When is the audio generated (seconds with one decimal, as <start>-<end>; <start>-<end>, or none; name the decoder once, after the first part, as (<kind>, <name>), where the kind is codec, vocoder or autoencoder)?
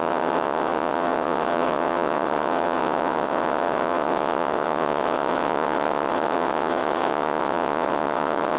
0.0-8.6 (vocoder, WaveNeXt)